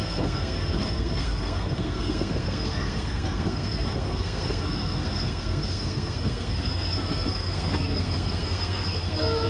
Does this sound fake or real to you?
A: fake